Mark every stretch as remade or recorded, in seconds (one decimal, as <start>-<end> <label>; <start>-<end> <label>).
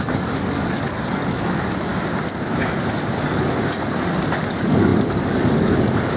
0.0-1.9 remade; 1.9-4.4 recorded; 4.4-6.2 remade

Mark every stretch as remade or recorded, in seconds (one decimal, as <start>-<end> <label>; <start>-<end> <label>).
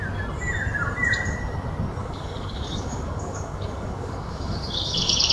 0.0-2.0 recorded; 2.0-5.3 remade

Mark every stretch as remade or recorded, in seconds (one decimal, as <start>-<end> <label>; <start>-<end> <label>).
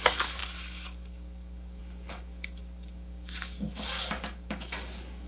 0.0-5.3 remade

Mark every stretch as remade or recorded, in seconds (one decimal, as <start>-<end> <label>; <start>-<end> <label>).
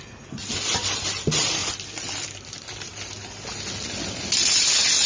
0.0-5.1 recorded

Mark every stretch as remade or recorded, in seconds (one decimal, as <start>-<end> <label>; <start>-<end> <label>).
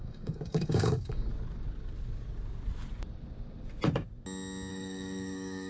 0.0-1.3 remade; 1.3-4.7 recorded; 4.7-5.7 remade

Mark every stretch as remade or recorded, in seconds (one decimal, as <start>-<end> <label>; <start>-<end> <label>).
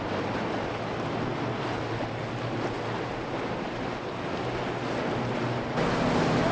0.0-6.5 recorded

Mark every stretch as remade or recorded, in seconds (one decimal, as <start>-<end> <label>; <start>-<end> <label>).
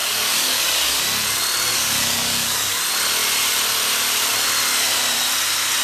0.0-1.0 remade; 1.0-1.7 recorded; 1.7-2.8 remade; 2.8-5.8 recorded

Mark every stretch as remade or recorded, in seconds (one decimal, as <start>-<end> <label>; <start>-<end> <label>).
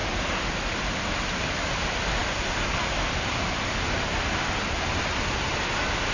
0.0-6.1 recorded